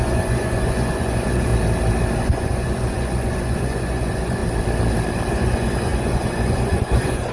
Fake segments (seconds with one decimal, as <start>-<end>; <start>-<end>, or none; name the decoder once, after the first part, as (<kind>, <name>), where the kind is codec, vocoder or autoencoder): 0.0-1.5 (vocoder, Vocos); 2.2-4.4; 5.3-7.3